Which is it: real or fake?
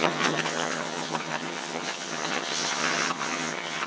fake